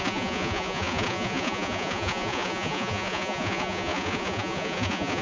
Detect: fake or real fake